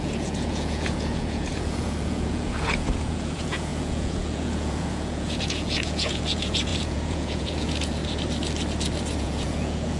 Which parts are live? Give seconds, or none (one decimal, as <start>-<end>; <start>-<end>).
8.0-9.2